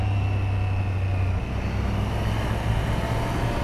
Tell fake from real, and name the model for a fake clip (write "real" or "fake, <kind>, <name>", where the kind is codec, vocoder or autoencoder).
real